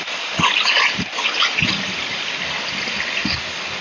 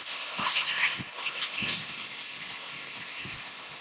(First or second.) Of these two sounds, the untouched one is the first